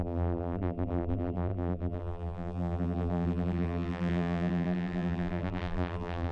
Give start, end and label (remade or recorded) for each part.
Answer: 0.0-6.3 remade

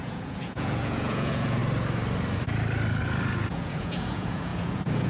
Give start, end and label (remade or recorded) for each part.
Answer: 0.0-1.6 remade; 1.6-3.5 recorded; 3.5-5.1 remade

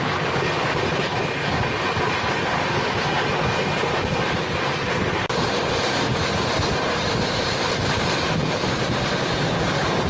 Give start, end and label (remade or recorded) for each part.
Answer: 0.0-10.1 recorded